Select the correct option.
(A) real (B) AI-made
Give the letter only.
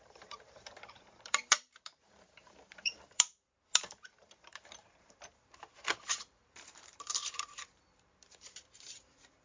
B